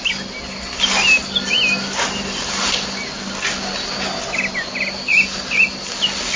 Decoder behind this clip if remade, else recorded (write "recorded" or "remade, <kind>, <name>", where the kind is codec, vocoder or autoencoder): recorded